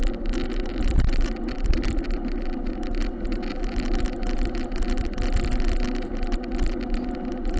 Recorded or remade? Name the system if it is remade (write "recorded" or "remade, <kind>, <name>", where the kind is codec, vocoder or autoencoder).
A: recorded